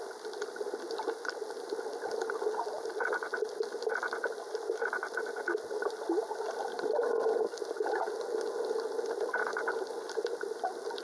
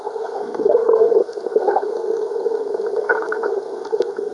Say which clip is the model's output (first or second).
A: second